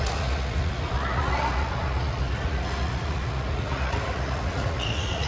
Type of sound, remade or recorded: remade